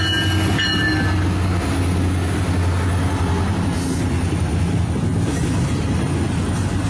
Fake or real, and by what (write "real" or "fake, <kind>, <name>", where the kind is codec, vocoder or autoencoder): real